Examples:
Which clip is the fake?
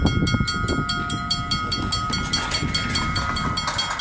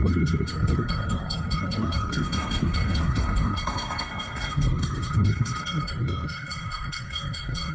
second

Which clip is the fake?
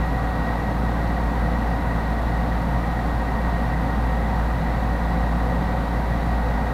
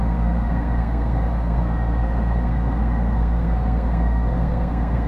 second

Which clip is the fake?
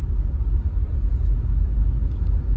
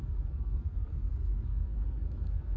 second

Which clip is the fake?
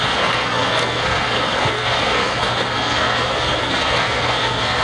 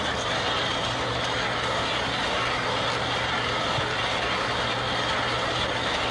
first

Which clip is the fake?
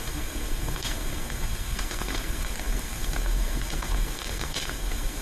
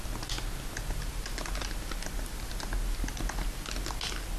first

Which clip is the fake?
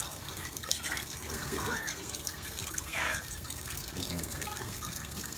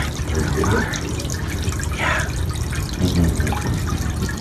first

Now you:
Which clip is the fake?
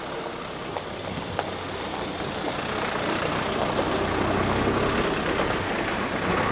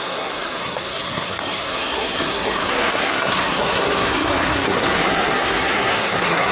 second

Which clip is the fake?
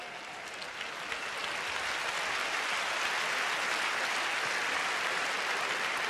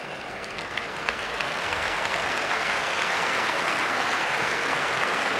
second